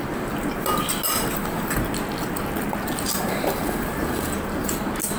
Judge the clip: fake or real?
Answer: real